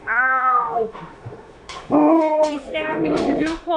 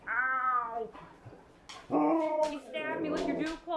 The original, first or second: second